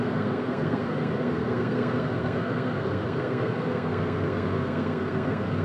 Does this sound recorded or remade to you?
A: remade